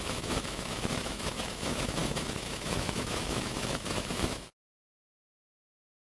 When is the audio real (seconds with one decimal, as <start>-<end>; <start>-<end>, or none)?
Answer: none